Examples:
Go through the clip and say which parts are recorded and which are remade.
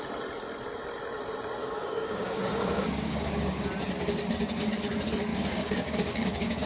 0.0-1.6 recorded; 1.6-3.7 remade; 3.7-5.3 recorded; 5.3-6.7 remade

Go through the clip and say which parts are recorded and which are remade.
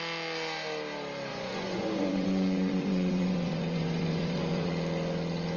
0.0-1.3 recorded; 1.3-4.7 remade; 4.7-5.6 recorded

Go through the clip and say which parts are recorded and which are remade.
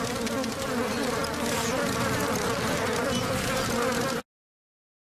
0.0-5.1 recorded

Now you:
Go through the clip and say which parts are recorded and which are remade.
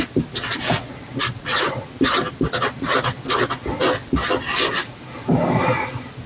0.0-6.3 recorded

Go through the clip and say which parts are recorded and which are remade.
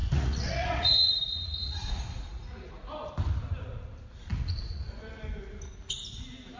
0.0-3.1 remade; 3.1-4.3 recorded; 4.3-4.9 remade; 4.9-6.6 recorded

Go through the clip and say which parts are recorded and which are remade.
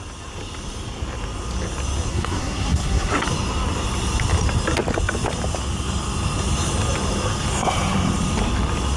0.0-2.1 recorded; 2.1-3.1 remade; 3.1-9.0 recorded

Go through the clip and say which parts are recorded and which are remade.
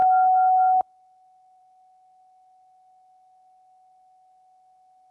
0.0-5.1 recorded